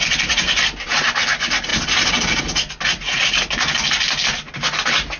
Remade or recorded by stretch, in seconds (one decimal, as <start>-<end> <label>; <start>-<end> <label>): 0.0-5.2 recorded